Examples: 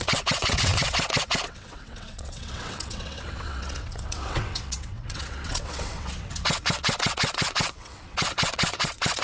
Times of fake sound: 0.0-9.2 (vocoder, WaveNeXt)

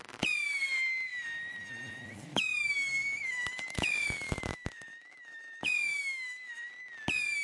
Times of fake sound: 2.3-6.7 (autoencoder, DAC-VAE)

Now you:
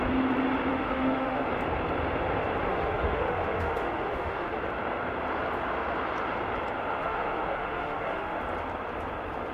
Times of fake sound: 0.7-1.5 (autoencoder, DAC-VAE); 2.7-4.5; 7.0-8.4